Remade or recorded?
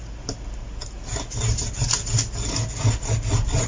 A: recorded